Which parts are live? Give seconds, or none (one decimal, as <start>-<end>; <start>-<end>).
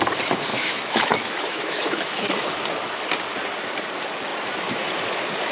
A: 0.0-0.5; 2.1-5.5